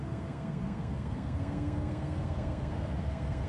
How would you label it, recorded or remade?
remade